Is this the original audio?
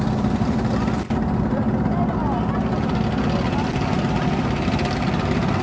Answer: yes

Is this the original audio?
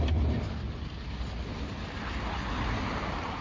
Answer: yes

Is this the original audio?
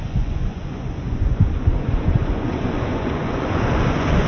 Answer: no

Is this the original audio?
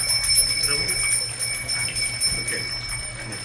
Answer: yes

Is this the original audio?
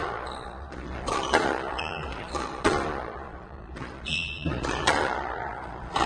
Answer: no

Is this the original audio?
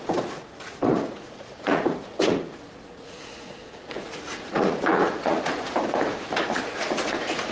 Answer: no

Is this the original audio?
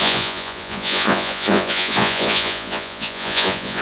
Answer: no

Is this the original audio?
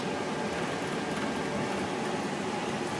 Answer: yes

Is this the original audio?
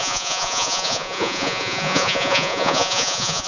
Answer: no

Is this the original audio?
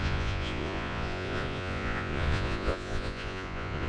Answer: no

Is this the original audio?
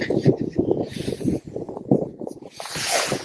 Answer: no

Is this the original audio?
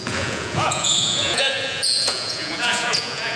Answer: no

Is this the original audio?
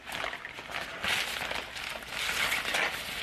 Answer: yes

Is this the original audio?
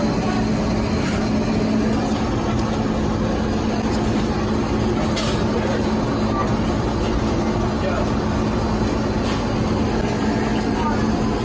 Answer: yes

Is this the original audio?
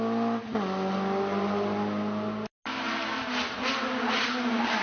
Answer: yes